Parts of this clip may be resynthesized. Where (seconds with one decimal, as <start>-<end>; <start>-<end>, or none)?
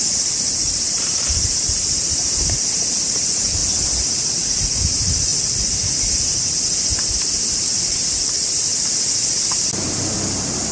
0.0-3.6; 4.3-5.3; 7.2-8.7